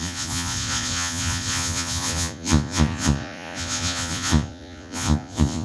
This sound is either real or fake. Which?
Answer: fake